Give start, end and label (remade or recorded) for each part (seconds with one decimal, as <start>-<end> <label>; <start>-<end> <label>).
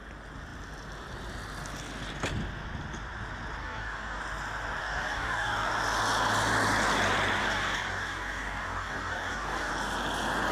0.0-3.6 recorded; 3.6-4.2 remade; 4.2-4.8 recorded; 4.8-5.7 remade; 5.7-7.4 recorded; 7.4-9.7 remade; 9.7-10.5 recorded